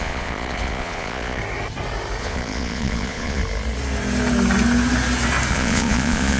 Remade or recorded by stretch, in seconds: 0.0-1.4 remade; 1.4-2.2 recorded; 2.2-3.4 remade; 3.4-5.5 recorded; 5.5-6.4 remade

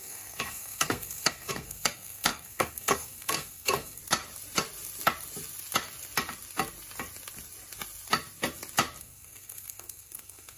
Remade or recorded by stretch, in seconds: 0.0-4.0 remade; 4.0-9.0 recorded; 9.0-10.6 remade

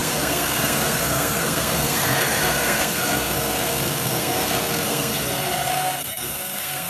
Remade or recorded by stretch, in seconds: 0.0-5.1 remade; 5.1-5.7 recorded; 5.7-6.9 remade

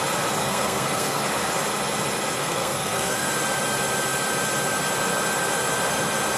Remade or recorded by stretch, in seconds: 0.0-0.4 recorded; 0.4-1.2 remade; 1.2-2.4 recorded; 2.4-3.3 remade; 3.3-6.4 recorded

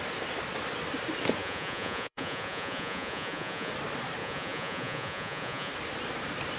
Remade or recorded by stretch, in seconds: 0.0-1.4 recorded; 1.4-3.7 remade; 3.7-4.2 recorded; 4.2-5.7 remade; 5.7-6.6 recorded